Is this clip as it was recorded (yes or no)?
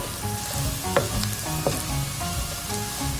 yes